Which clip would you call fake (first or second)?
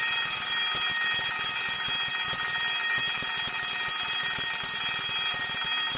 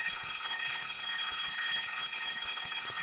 second